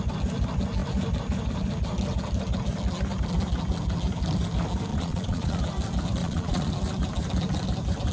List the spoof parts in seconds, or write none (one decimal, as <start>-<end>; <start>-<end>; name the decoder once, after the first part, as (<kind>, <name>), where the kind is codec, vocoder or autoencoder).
4.9-5.6 (vocoder, Vocos); 6.2-6.7